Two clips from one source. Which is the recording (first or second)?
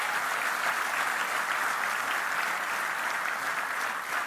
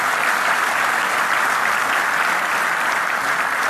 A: first